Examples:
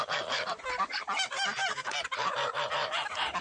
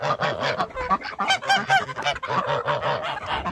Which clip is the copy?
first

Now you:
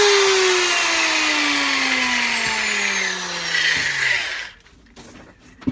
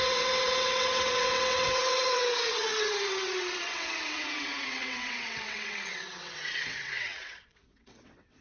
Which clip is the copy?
second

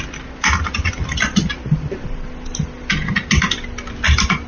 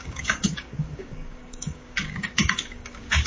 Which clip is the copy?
second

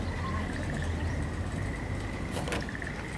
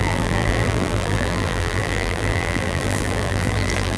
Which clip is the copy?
second